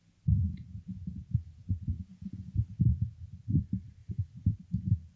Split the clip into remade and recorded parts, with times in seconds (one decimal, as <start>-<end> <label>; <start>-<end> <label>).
0.0-5.2 recorded